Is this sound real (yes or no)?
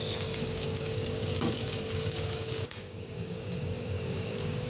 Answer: no